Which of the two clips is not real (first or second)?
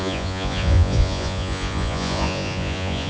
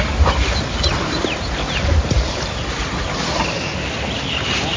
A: first